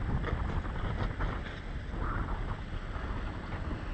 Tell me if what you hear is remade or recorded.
recorded